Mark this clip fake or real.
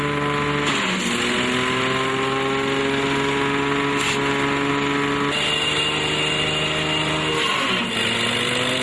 real